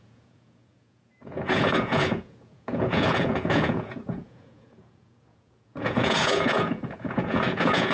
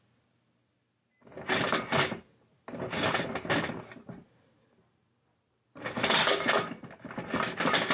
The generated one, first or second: first